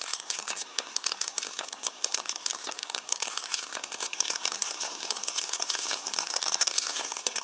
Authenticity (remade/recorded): remade